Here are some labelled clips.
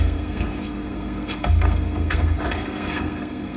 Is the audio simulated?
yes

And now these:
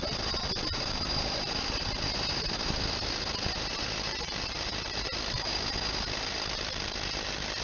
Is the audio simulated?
no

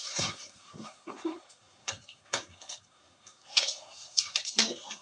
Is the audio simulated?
yes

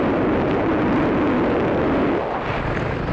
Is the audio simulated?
no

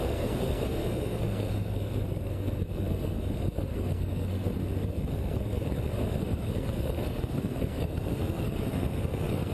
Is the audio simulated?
yes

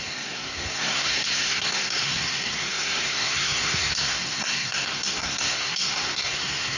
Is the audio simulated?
yes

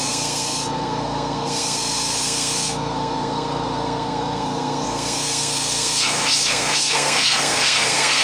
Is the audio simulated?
yes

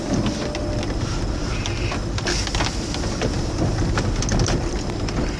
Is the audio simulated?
no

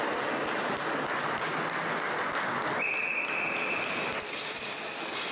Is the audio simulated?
no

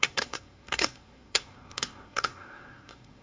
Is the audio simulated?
yes